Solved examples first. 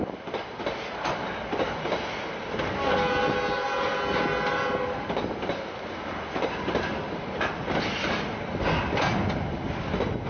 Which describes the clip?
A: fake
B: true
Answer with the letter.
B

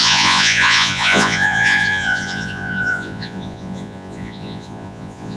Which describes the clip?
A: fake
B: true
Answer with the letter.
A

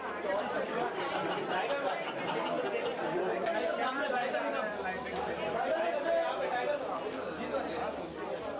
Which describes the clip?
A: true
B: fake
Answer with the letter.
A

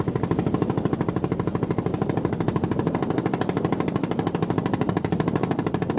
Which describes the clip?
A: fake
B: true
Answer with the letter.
B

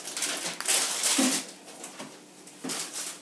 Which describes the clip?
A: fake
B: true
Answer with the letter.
B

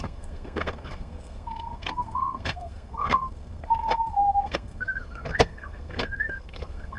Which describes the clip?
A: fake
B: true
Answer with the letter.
A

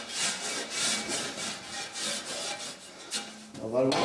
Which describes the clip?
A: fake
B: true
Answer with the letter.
B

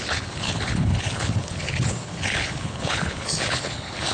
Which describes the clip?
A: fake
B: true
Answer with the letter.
A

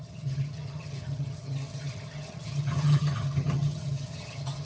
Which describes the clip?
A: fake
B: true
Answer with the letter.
A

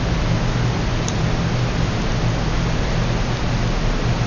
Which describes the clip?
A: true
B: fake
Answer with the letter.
A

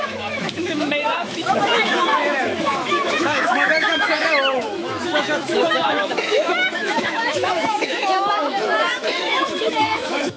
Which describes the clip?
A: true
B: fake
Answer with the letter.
B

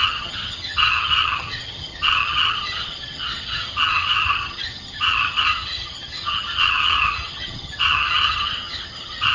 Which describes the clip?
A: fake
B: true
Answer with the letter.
A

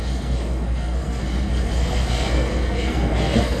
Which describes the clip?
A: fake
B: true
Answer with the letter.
A